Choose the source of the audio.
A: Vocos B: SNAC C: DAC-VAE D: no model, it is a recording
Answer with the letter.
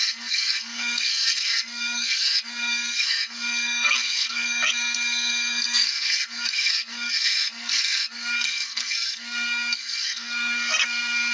B